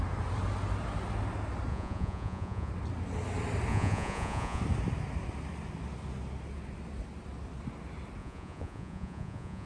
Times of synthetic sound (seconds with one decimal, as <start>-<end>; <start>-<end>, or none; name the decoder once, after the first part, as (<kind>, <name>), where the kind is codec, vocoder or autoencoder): 1.7-2.7 (vocoder, Vocos); 3.7-4.6; 8.2-9.7